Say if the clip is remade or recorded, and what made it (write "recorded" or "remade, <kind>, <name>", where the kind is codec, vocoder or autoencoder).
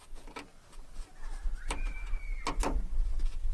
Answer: recorded